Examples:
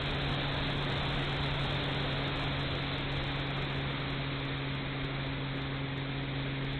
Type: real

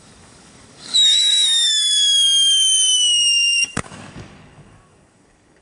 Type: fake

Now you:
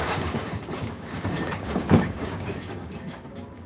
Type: fake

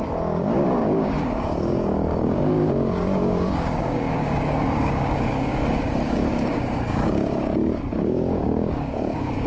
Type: fake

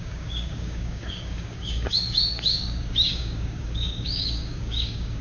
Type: fake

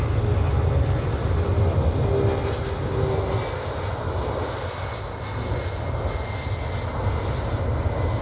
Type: real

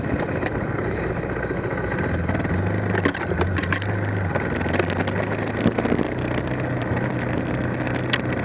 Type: real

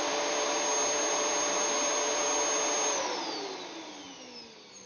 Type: real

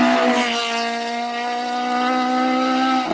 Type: real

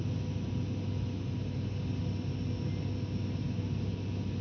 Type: real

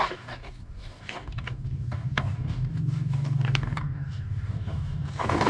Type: fake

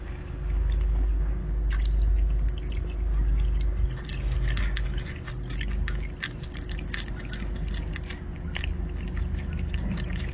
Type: real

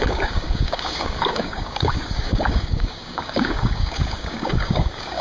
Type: fake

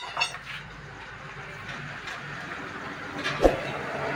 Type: real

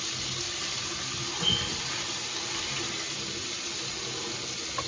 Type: real